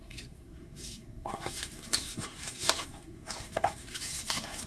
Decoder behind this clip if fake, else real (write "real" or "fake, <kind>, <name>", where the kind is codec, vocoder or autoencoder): fake, codec, SNAC